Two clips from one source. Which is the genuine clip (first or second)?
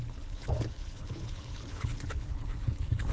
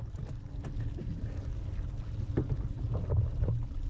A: second